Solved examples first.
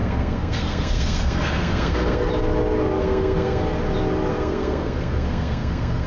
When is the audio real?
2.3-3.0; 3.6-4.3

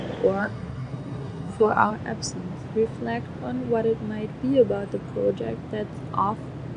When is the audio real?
0.0-0.4; 1.9-6.8

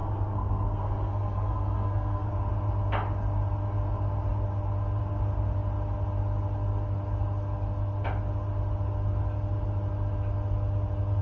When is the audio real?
2.3-11.2

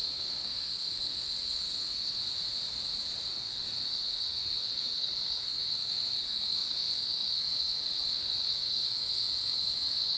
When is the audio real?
2.2-3.3

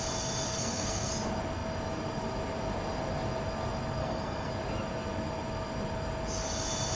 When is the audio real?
0.0-0.5; 1.1-4.0; 4.5-6.9